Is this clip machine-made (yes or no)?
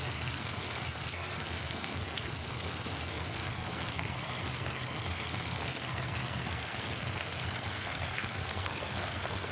yes